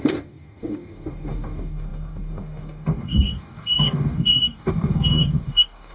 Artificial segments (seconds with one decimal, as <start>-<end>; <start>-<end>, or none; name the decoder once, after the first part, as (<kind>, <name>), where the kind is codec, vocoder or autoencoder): 0.0-5.9 (codec, DAC)